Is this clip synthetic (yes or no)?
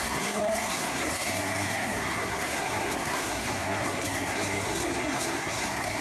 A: yes